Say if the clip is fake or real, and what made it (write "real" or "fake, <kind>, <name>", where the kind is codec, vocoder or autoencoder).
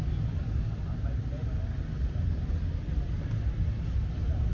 real